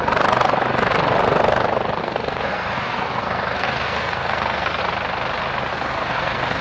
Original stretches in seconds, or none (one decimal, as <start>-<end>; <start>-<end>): 0.0-2.0; 4.8-5.7